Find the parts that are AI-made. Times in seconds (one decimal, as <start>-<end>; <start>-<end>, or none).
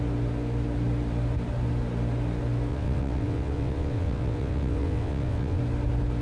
2.7-5.6